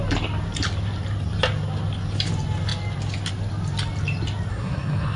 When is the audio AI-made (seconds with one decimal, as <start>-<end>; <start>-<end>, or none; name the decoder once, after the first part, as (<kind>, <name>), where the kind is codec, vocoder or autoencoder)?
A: 4.5-5.2 (codec, SNAC)